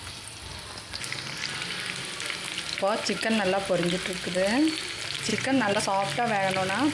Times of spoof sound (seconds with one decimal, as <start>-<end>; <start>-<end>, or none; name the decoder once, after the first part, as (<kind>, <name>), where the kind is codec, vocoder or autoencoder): 5.3-5.8 (vocoder, Vocos)